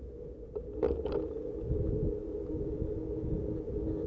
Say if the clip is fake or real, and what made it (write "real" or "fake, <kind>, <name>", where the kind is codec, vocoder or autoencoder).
real